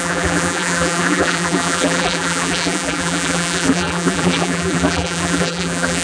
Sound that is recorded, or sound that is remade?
remade